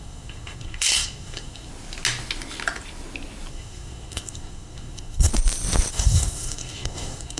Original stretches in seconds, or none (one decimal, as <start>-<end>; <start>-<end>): 1.7-3.5; 5.3-5.9